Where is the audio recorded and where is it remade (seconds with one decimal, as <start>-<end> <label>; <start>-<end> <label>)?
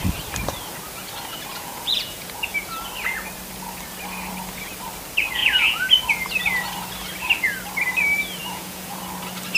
0.0-1.5 recorded; 1.5-2.7 remade; 2.7-5.4 recorded; 5.4-5.9 remade; 5.9-8.4 recorded; 8.4-9.0 remade; 9.0-9.6 recorded